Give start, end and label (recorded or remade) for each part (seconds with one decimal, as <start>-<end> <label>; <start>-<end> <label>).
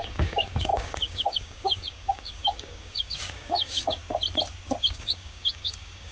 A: 0.0-4.0 remade; 4.0-4.8 recorded; 4.8-6.1 remade